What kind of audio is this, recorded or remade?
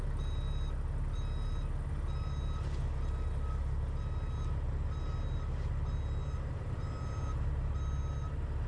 recorded